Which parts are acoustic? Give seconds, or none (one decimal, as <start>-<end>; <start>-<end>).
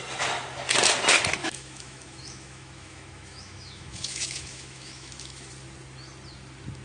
0.0-1.4; 5.5-6.8